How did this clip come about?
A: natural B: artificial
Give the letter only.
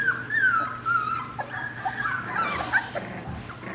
A